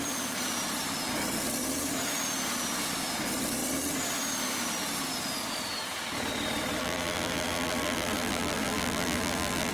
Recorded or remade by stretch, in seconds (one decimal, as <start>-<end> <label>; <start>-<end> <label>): 0.0-6.8 recorded; 6.8-9.7 remade